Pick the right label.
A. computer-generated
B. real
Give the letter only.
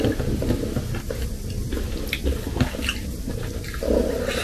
B